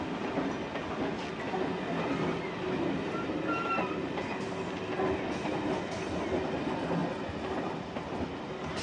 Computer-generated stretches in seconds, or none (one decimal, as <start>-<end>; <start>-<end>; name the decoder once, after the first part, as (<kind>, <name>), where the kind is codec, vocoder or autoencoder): none